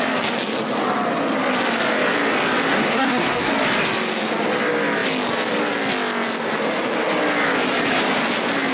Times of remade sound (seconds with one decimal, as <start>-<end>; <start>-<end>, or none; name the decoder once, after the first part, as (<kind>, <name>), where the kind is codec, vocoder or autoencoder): 2.7-3.5 (codec, SNAC)